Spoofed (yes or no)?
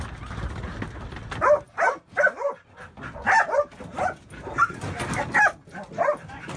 no